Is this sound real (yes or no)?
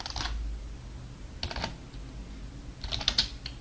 yes